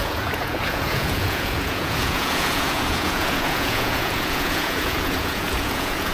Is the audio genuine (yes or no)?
no